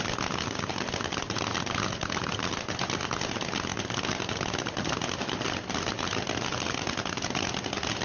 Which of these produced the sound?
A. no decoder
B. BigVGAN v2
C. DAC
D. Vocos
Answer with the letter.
A